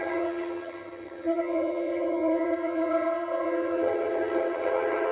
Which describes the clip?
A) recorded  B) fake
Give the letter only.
B